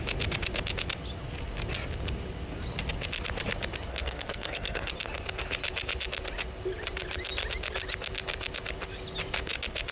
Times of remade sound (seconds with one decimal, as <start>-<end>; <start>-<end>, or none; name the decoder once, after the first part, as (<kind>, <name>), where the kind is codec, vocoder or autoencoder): 3.9-4.9 (codec, SNAC)